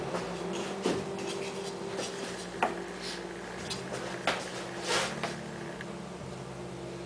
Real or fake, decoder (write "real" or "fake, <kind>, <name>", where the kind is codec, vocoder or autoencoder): real